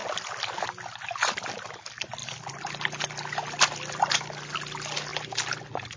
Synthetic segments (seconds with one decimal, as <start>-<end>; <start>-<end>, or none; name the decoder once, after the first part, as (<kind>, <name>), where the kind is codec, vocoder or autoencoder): none